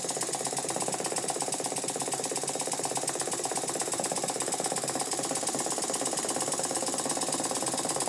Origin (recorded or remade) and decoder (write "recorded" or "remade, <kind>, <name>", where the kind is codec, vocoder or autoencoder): remade, vocoder, BigVGAN v2